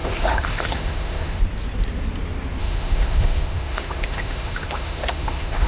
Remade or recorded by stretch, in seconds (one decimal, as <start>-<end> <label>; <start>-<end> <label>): 0.0-1.4 remade; 1.4-2.6 recorded; 2.6-5.7 remade